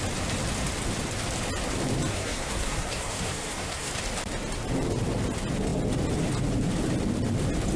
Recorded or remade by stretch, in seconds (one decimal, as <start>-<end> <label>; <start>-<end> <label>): 0.0-2.1 recorded; 2.1-3.9 remade; 3.9-7.8 recorded